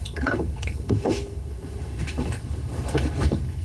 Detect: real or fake fake